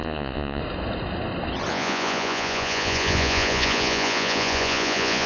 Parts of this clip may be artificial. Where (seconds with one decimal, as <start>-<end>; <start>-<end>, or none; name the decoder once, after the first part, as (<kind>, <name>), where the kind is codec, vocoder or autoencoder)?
0.0-0.6 (vocoder, Vocos); 1.7-5.3